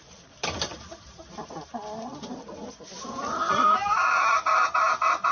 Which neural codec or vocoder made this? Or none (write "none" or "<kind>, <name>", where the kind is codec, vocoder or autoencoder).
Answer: none